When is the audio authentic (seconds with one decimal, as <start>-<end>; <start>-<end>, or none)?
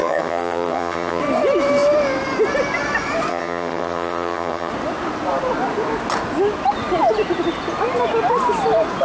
1.2-3.3; 4.7-9.0